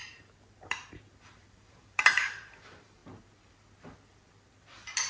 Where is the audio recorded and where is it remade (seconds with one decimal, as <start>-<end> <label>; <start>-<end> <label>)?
0.0-1.7 recorded; 1.7-3.0 remade; 3.0-5.1 recorded